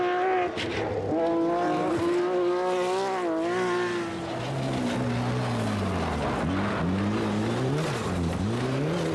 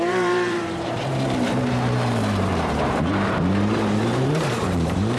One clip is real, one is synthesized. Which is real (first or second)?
first